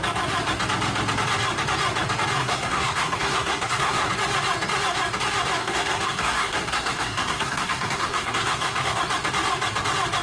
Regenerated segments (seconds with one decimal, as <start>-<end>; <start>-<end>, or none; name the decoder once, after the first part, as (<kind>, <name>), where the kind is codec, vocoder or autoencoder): 2.4-4.1 (codec, SNAC); 5.6-9.0